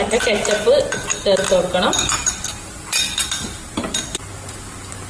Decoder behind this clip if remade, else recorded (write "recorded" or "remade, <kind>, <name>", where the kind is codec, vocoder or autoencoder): recorded